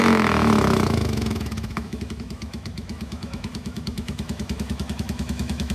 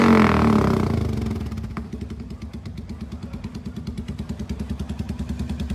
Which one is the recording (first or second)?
second